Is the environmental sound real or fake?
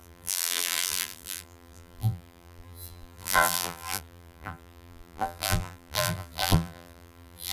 fake